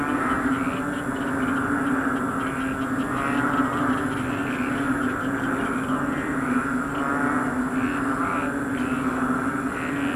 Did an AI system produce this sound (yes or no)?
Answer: no